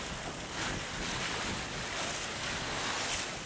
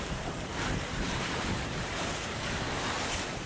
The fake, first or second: second